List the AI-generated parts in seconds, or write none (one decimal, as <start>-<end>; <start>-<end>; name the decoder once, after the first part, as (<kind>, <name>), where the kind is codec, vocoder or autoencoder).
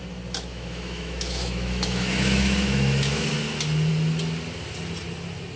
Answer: 0.5-3.3 (autoencoder, DAC-VAE)